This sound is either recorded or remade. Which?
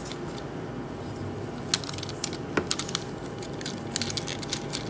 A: recorded